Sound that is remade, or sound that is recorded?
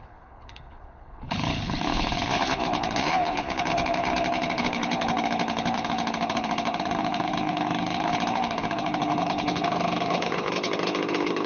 remade